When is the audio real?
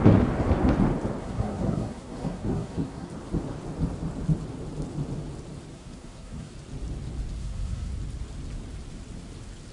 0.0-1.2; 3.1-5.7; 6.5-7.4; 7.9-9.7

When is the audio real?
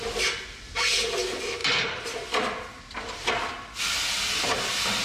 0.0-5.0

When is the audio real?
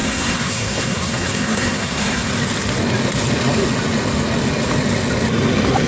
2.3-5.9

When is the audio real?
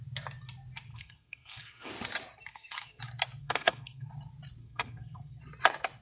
0.0-0.9; 1.9-2.5; 3.0-3.4; 4.1-4.6; 5.4-6.0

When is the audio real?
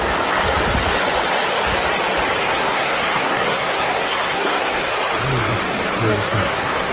0.0-2.4; 4.9-6.1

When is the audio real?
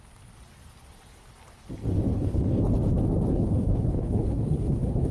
0.0-2.1; 2.7-3.3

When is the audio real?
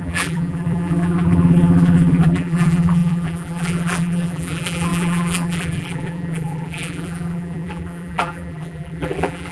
none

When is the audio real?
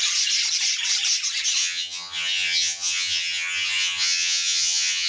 0.0-1.6